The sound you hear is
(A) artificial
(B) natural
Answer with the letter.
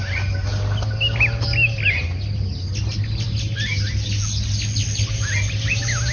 B